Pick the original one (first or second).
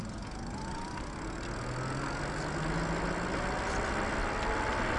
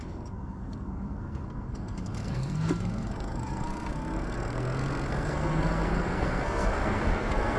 first